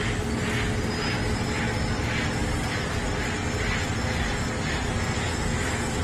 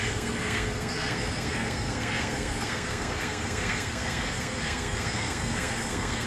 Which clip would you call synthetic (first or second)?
second